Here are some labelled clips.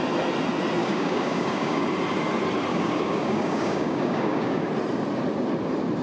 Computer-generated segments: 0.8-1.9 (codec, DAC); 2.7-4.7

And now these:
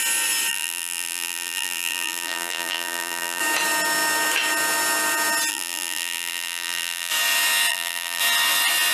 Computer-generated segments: 0.5-3.4 (vocoder, BigVGAN v2); 5.5-7.1; 7.7-8.2

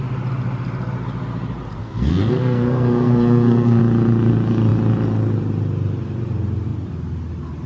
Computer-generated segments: 1.8-3.8 (codec, SNAC)

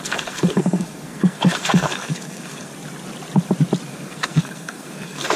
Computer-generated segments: 0.0-2.7 (codec, SNAC); 3.9-5.4

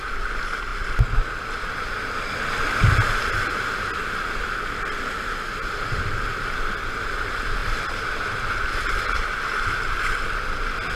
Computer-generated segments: none

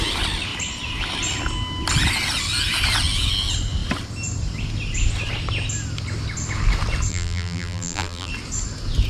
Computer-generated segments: 7.1-8.3 (vocoder, BigVGAN v2)

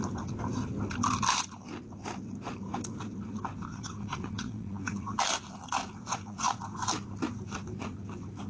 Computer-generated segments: 3.7-5.2 (vocoder, WaveNeXt); 6.1-6.6